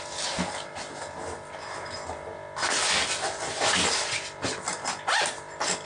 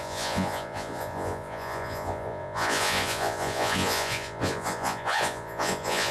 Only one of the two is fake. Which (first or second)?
second